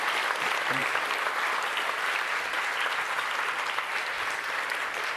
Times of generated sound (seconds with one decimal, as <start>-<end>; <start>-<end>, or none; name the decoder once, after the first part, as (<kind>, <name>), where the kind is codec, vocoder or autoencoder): none